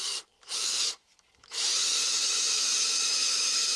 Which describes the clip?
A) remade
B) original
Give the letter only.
A